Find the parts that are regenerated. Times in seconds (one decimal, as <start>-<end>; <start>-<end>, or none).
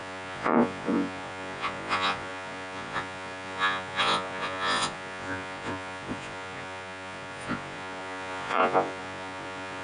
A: 0.0-9.8